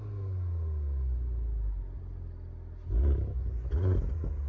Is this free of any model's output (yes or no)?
yes